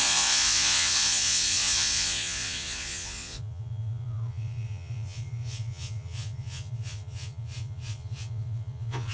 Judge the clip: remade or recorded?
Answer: remade